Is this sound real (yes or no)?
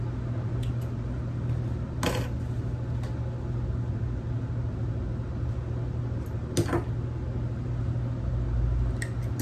yes